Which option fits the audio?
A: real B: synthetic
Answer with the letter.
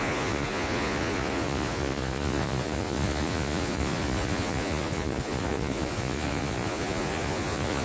B